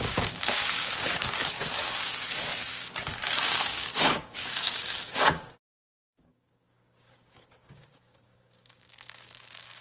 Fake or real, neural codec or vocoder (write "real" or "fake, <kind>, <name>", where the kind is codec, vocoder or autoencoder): fake, codec, DAC